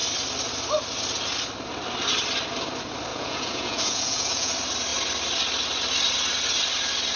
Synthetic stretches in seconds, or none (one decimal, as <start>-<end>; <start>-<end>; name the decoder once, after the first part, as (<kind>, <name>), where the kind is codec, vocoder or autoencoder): 3.1-4.5 (vocoder, Vocos)